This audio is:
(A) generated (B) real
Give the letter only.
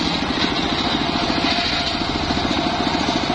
B